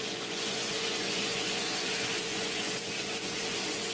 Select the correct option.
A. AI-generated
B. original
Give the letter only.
A